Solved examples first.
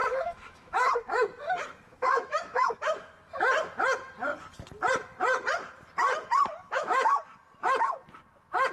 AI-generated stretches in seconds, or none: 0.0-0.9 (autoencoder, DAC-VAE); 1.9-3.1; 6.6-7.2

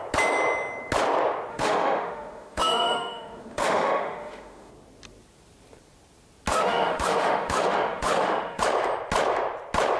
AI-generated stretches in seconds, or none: 1.5-4.7 (autoencoder, DAC-VAE); 6.5-8.6

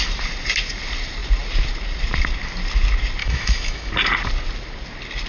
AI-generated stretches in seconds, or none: 3.2-3.9 (autoencoder, DAC-VAE)

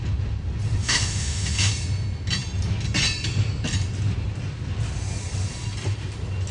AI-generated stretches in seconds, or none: 0.8-1.7 (autoencoder, DAC-VAE)

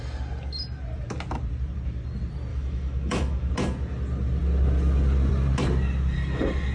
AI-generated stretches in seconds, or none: 2.5-3.5 (autoencoder, DAC-VAE)

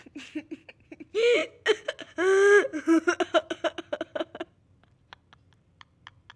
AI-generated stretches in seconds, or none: none